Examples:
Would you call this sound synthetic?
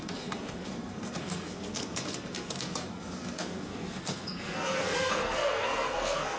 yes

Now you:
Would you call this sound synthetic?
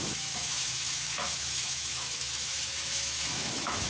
yes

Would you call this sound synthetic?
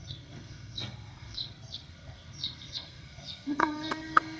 yes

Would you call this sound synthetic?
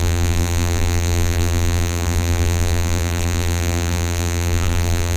yes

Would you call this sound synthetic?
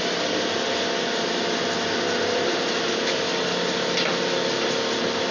no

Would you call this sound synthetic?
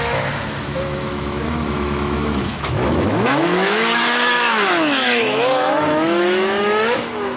yes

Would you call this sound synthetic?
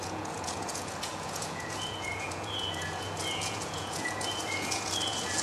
yes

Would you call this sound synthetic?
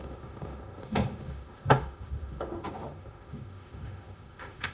yes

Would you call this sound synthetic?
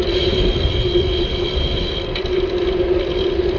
no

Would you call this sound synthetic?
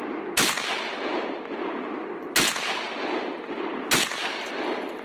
no